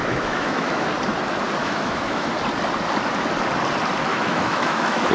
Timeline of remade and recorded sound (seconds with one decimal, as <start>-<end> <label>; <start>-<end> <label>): 0.0-0.9 remade; 0.9-1.6 recorded; 1.6-2.3 remade; 2.3-4.1 recorded; 4.1-5.1 remade